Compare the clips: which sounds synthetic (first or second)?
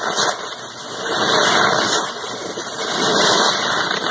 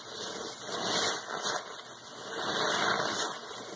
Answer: first